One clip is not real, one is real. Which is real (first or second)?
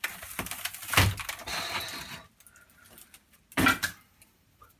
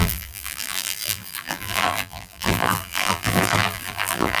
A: first